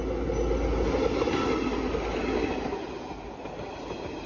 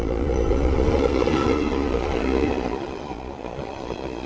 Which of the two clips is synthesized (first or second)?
second